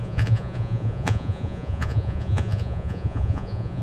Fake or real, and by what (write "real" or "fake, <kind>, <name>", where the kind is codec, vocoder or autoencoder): fake, vocoder, Vocos